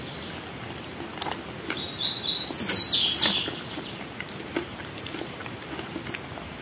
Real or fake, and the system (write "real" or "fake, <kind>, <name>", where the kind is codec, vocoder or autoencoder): real